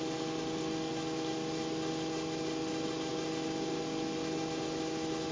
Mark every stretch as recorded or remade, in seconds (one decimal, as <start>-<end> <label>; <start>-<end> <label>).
0.0-5.3 recorded